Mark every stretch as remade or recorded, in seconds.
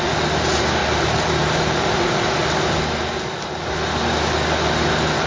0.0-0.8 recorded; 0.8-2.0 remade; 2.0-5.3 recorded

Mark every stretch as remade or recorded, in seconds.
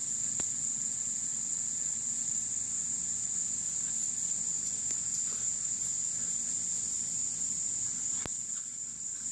0.0-2.4 remade; 2.4-8.3 recorded; 8.3-8.8 remade; 8.8-9.3 recorded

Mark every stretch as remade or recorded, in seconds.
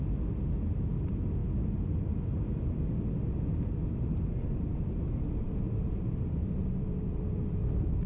0.0-8.1 recorded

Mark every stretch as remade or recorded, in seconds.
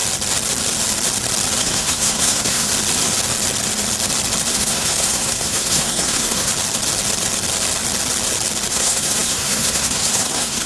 0.0-1.6 recorded; 1.6-2.7 remade; 2.7-4.5 recorded; 4.5-6.5 remade; 6.5-8.7 recorded; 8.7-10.7 remade